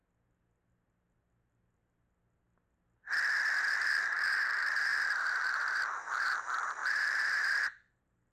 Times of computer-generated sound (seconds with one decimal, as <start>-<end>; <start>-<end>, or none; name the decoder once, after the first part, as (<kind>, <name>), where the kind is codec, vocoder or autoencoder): 3.7-8.3 (vocoder, BigVGAN v2)